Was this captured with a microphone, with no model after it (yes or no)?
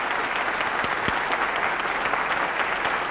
yes